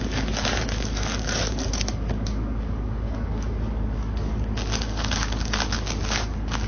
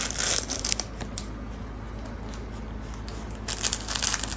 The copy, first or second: first